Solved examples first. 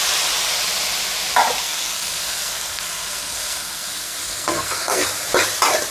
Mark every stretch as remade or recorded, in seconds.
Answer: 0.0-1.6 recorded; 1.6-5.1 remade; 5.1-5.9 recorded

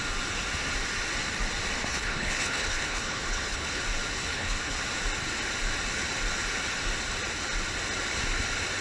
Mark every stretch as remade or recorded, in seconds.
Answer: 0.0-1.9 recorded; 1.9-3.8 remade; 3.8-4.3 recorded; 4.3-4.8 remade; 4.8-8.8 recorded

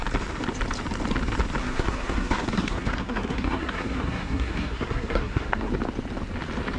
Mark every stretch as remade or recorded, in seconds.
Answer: 0.0-1.6 recorded; 1.6-5.7 remade; 5.7-6.8 recorded

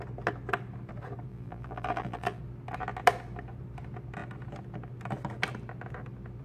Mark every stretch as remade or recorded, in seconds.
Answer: 0.0-1.3 recorded; 1.3-2.4 remade; 2.4-6.4 recorded

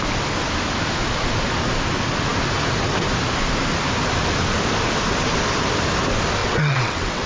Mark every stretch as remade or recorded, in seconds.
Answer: 0.0-6.4 recorded; 6.4-7.3 remade

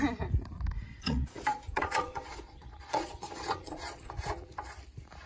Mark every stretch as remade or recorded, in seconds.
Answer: 0.0-0.9 recorded; 0.9-4.1 remade; 4.1-5.3 recorded